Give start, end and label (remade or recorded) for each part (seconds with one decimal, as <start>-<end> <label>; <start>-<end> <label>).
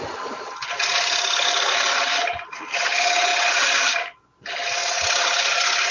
0.0-5.9 recorded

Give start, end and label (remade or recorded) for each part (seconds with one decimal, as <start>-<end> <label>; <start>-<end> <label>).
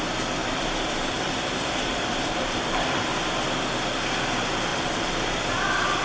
0.0-0.4 recorded; 0.4-3.1 remade; 3.1-4.7 recorded; 4.7-5.4 remade; 5.4-6.0 recorded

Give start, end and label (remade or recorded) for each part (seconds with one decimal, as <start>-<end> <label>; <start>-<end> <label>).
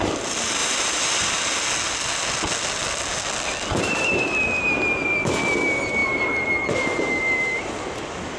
0.0-0.6 recorded; 0.6-1.4 remade; 1.4-8.4 recorded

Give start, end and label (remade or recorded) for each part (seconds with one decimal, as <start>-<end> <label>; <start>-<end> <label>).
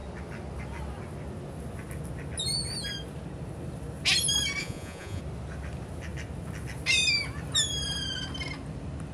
0.0-4.6 recorded; 4.6-5.2 remade; 5.2-9.1 recorded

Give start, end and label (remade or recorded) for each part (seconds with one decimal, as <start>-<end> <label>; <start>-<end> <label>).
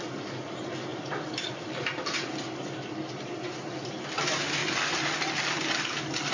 0.0-0.9 recorded; 0.9-2.2 remade; 2.2-4.6 recorded; 4.6-6.3 remade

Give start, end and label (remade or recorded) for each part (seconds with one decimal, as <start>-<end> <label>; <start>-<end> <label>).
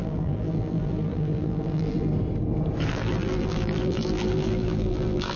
0.0-2.1 remade; 2.1-2.9 recorded; 2.9-5.4 remade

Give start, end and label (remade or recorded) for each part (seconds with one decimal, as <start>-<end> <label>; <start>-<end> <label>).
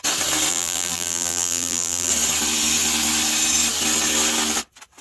0.0-0.5 recorded; 0.5-2.1 remade; 2.1-5.0 recorded